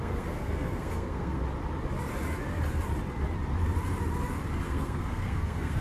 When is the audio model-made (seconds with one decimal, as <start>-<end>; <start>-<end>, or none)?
0.0-1.4; 4.6-5.8